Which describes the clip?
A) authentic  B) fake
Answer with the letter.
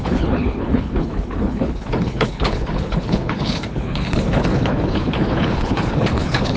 B